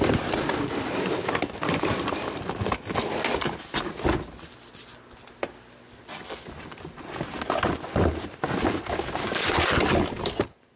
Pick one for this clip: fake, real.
real